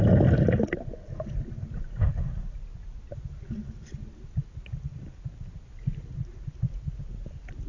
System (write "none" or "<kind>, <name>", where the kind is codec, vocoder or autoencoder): none